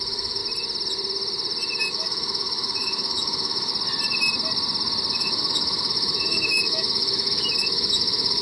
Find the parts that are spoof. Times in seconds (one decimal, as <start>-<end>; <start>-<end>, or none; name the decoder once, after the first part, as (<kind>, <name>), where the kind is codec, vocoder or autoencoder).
0.0-0.4 (autoencoder, DAC-VAE); 1.9-3.7; 5.1-8.4